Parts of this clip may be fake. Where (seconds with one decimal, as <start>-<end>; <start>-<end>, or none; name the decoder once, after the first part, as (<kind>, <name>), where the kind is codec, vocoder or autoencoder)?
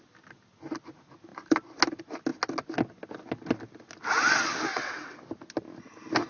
4.7-5.2 (vocoder, WaveNeXt)